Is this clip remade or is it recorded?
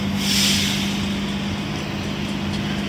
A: recorded